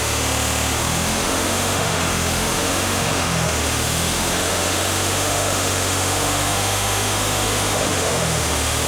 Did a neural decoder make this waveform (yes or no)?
yes